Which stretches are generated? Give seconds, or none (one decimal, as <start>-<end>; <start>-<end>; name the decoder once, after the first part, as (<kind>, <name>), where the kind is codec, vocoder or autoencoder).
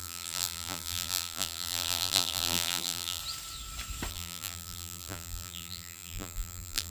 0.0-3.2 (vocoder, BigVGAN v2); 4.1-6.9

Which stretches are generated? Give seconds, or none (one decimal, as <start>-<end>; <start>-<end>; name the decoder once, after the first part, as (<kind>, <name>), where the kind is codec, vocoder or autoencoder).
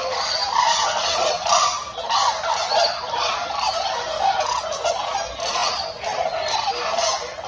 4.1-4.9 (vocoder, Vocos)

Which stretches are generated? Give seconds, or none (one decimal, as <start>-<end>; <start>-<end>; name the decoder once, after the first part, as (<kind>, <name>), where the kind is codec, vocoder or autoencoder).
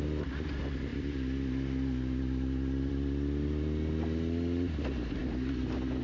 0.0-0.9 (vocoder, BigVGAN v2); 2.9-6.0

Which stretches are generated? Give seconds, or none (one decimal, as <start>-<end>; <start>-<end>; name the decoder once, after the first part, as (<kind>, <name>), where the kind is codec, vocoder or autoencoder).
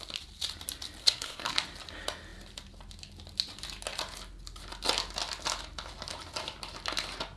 1.0-1.5 (codec, SNAC)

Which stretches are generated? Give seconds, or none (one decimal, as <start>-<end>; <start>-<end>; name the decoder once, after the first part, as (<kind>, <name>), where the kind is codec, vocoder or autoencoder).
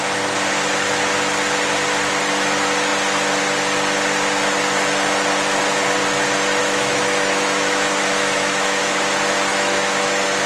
6.6-8.8 (autoencoder, DAC-VAE); 9.5-10.5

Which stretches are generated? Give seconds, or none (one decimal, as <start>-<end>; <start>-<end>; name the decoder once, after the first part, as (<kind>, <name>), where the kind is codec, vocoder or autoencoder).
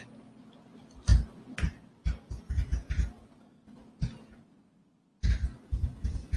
none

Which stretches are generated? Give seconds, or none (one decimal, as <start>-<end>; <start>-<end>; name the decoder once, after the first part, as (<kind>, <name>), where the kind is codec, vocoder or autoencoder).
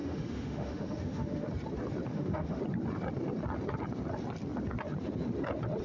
0.0-1.5 (autoencoder, DAC-VAE); 2.1-2.6